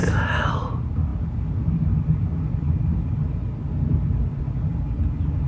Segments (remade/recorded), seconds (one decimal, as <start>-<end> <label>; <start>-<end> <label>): 0.0-0.5 remade; 0.5-5.5 recorded